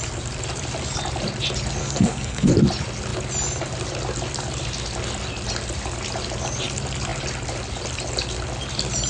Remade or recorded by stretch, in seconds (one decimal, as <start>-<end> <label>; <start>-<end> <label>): 0.0-1.8 recorded; 1.8-2.5 remade; 2.5-9.1 recorded